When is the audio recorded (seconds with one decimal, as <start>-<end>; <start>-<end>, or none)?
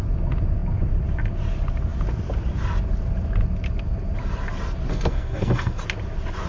0.0-4.9; 5.8-6.5